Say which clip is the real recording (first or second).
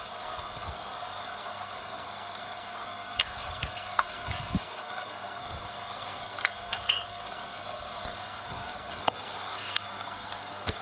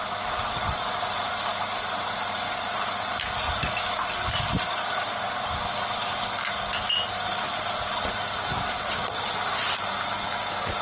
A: second